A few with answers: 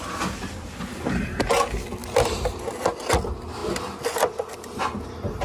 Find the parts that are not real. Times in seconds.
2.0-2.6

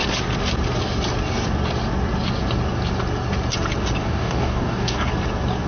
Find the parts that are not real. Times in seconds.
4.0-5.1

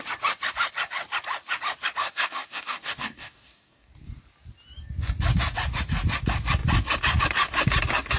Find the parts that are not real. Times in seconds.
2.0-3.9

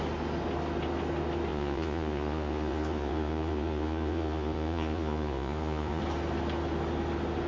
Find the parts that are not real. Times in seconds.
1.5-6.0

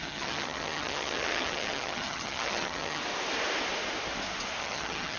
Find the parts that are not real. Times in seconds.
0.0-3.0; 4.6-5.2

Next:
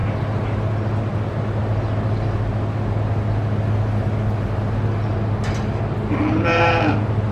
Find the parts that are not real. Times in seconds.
none

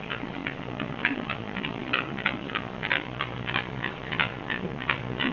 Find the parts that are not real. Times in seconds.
0.0-5.3

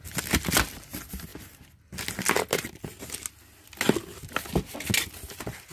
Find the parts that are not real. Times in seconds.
none